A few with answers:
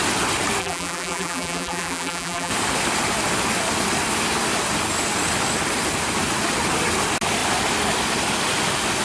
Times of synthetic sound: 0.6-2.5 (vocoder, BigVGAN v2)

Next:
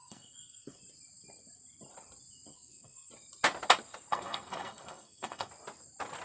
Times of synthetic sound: 0.0-0.8 (codec, SNAC); 2.5-3.1; 4.1-5.5

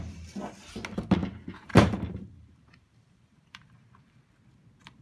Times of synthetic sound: 1.2-4.2 (vocoder, BigVGAN v2)

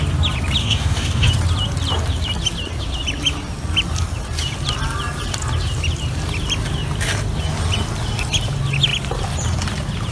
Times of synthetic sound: 0.6-1.3 (codec, DAC)

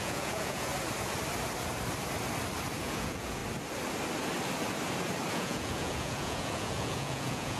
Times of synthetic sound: 0.0-0.7 (vocoder, Vocos); 2.8-3.4; 5.3-7.6

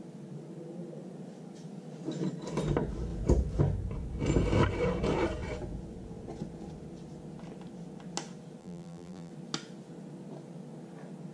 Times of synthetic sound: 8.6-9.3 (vocoder, BigVGAN v2)

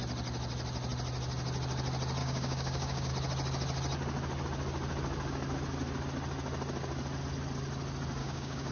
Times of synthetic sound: 2.2-3.1 (codec, DAC); 8.2-8.7

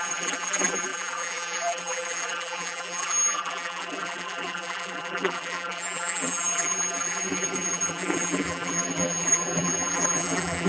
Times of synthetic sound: 0.0-10.7 (vocoder, BigVGAN v2)